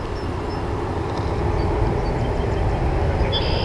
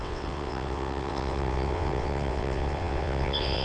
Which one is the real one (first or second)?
first